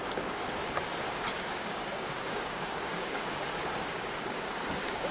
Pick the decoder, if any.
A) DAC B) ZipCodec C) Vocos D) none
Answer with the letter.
A